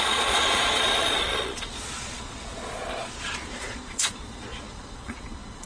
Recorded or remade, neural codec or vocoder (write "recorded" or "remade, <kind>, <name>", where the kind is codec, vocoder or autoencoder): remade, vocoder, Vocos